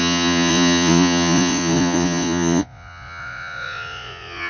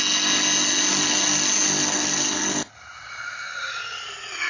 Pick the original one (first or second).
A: second